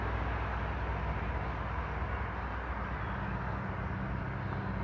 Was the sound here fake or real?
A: real